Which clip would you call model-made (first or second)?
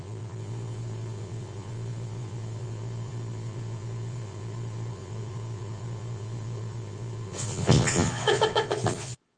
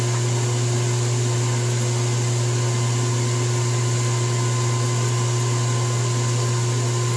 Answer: first